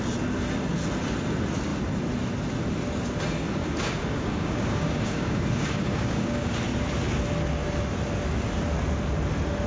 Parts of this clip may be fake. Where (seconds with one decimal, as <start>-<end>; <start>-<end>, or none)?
3.6-6.5